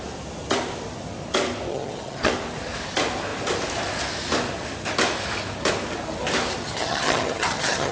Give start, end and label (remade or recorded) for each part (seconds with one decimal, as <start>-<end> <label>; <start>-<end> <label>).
0.0-1.7 recorded; 1.7-2.3 remade; 2.3-6.6 recorded; 6.6-7.9 remade

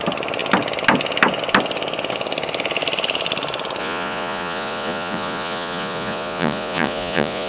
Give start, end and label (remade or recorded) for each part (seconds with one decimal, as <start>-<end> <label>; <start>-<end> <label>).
0.0-3.8 recorded; 3.8-7.5 remade

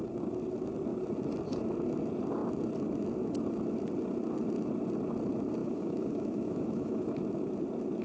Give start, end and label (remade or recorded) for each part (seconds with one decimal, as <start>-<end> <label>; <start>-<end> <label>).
0.0-5.6 recorded; 5.6-7.1 remade; 7.1-8.0 recorded

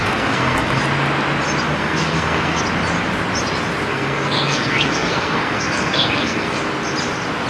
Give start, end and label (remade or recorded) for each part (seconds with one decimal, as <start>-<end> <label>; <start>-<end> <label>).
0.0-0.8 remade; 0.8-1.8 recorded; 1.8-2.6 remade; 2.6-3.9 recorded; 3.9-6.6 remade; 6.6-7.5 recorded

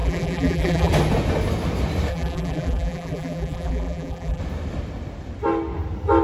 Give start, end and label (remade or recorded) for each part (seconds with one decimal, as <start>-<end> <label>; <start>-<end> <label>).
0.0-0.9 remade; 0.9-2.1 recorded; 2.1-4.4 remade; 4.4-6.2 recorded

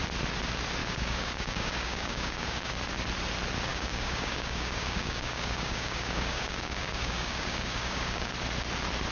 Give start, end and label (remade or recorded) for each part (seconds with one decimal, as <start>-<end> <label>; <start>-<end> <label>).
0.0-0.8 recorded; 0.8-2.7 remade; 2.7-3.7 recorded; 3.7-8.3 remade; 8.3-9.1 recorded

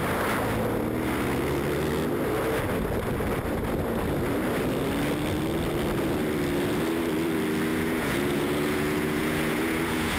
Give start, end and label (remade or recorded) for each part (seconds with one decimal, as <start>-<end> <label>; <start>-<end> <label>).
0.0-7.7 recorded; 7.7-10.2 remade

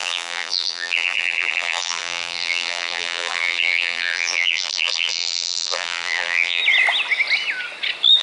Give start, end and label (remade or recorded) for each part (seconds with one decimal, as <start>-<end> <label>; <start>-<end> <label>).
0.0-6.6 remade; 6.6-8.2 recorded